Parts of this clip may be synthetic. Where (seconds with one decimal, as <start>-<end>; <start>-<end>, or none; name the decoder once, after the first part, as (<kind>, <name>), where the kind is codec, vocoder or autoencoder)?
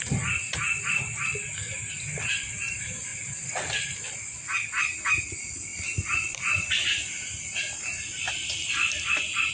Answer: 3.1-4.2 (vocoder, BigVGAN v2)